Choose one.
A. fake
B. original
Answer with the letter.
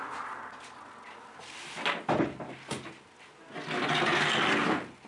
B